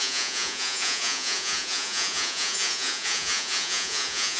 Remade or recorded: remade